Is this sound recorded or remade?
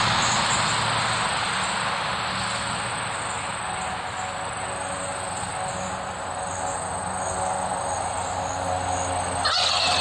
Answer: recorded